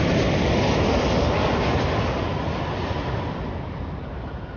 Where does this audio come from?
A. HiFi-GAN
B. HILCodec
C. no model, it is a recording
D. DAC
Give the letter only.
C